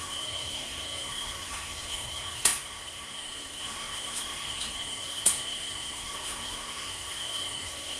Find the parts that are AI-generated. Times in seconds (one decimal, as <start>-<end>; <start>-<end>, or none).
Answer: 0.0-8.0